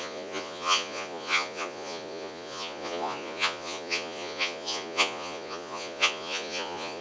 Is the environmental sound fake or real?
fake